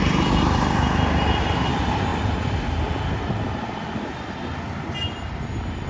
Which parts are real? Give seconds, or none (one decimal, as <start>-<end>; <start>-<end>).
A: 0.0-5.9